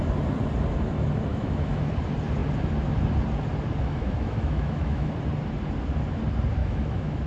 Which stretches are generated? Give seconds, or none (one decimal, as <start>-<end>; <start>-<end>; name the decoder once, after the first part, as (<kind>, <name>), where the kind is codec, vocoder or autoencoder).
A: 1.3-1.9 (autoencoder, DAC-VAE); 3.8-5.1; 6.6-7.3